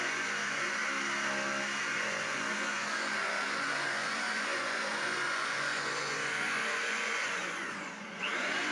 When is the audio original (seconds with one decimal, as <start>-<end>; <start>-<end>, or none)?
0.8-1.8